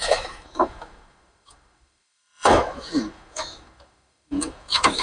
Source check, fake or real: fake